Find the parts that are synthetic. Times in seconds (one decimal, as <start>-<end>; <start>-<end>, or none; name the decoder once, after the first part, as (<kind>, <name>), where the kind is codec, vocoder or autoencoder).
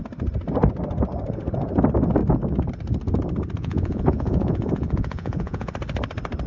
3.6-5.7 (vocoder, Vocos)